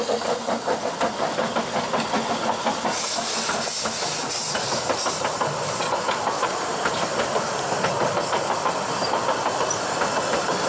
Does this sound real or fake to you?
real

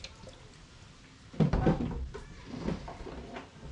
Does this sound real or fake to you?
real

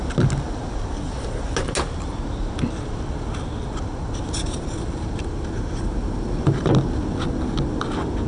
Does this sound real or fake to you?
real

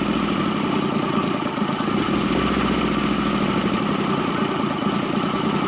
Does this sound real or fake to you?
real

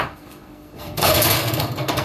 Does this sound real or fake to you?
fake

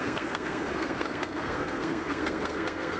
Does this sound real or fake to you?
fake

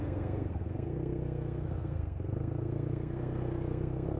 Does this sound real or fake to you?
fake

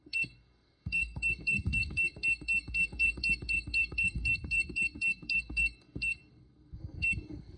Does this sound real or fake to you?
fake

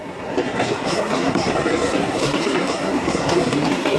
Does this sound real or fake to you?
fake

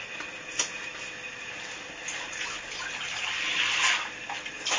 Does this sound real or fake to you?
real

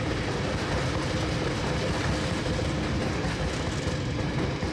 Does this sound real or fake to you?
real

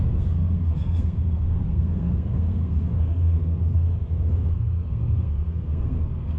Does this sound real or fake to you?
fake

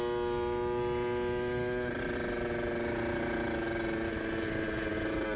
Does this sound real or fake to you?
real